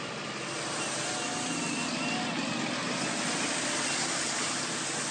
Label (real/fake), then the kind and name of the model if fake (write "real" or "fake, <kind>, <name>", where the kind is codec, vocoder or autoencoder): real